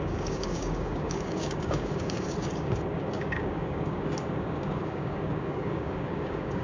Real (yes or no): no